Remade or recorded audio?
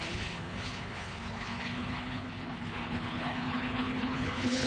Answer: remade